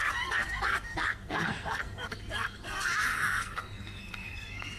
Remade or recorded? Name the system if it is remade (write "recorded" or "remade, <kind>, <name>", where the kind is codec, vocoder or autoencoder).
remade, codec, SNAC